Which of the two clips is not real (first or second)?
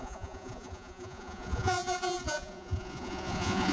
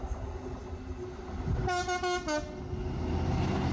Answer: first